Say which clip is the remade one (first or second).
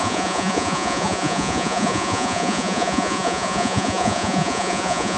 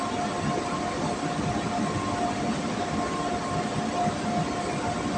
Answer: first